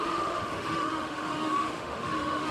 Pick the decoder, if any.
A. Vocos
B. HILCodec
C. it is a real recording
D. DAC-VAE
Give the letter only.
D